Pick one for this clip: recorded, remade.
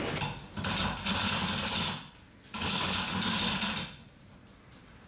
recorded